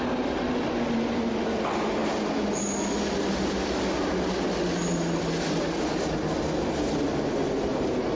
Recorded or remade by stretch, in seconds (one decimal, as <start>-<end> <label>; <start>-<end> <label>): 0.0-8.2 recorded